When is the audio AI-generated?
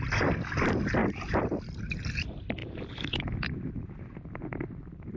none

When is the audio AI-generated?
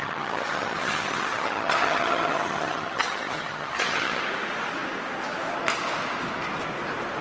0.0-4.2 (vocoder, HiFi-GAN)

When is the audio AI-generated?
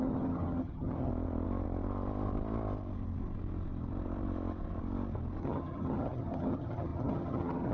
0.0-1.1 (vocoder, HiFi-GAN); 5.4-7.7